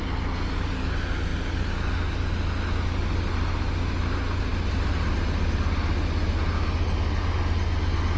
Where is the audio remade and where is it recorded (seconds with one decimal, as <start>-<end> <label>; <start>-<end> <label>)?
0.0-8.2 recorded

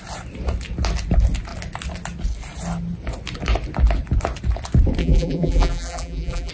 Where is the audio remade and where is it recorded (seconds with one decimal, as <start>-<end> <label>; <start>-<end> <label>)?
0.0-5.0 recorded; 5.0-6.5 remade